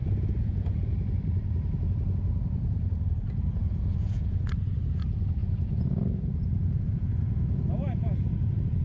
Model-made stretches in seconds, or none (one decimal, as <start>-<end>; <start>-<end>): 0.0-0.8; 3.6-4.4; 5.4-8.3